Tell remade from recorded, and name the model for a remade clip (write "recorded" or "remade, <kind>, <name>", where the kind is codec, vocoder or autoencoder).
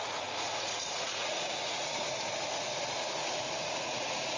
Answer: remade, vocoder, Vocos